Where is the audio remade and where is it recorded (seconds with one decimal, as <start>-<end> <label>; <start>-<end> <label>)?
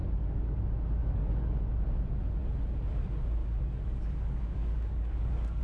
0.0-0.6 remade; 0.6-1.0 recorded; 1.0-1.6 remade; 1.6-3.4 recorded; 3.4-5.6 remade